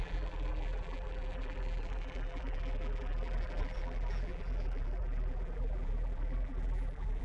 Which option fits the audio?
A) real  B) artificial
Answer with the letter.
B